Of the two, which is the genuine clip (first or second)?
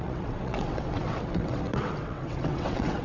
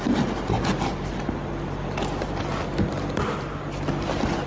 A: second